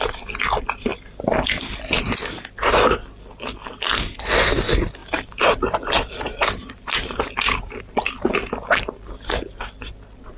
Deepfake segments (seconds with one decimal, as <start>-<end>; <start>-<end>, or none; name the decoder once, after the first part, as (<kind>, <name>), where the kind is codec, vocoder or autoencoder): 5.0-7.8 (vocoder, BigVGAN v2)